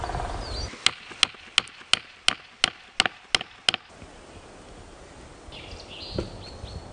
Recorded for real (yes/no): yes